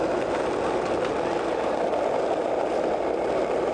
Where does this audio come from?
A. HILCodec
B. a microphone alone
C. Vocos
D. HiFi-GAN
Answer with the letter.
B